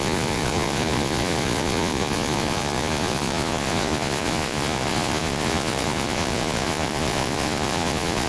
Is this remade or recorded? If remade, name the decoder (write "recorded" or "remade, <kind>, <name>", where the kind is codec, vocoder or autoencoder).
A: remade, vocoder, Vocos